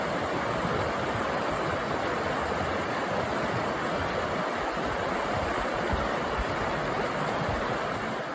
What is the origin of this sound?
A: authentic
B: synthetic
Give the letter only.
A